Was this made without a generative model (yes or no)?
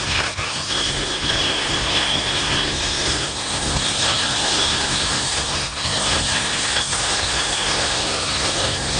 no